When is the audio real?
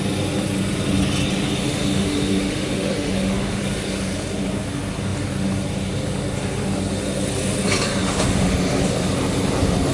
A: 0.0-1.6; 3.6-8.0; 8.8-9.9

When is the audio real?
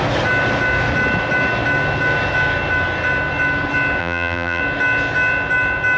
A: 0.0-4.0; 4.6-6.0